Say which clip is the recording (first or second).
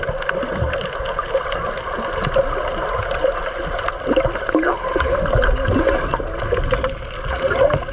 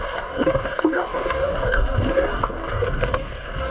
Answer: first